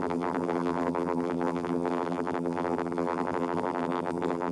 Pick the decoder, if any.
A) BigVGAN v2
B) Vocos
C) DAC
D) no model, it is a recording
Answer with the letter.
A